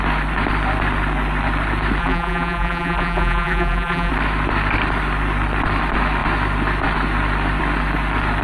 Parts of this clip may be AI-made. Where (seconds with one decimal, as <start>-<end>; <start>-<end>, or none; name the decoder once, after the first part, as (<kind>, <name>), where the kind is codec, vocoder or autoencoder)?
2.0-4.1 (vocoder, BigVGAN v2)